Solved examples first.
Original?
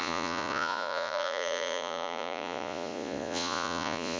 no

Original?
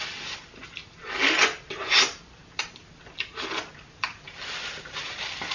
yes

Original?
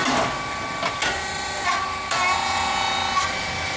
yes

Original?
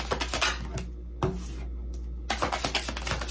yes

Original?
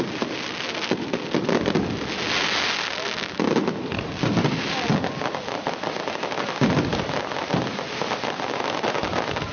yes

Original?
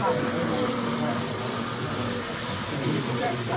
yes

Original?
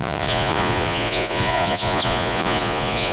no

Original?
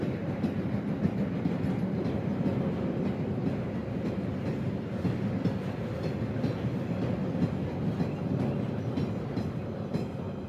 yes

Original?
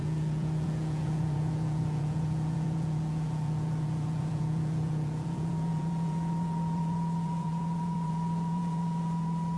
no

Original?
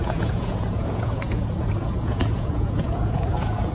no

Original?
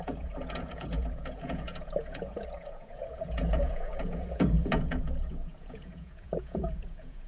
no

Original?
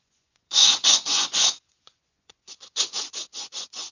no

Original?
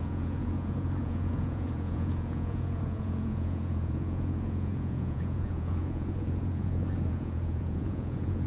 no